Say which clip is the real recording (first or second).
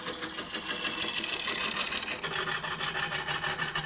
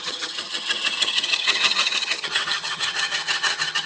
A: first